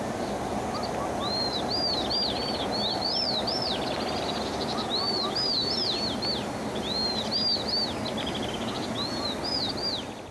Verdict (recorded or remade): recorded